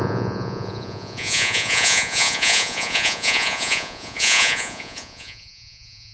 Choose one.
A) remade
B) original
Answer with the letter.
A